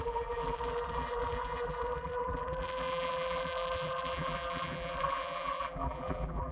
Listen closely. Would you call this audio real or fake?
fake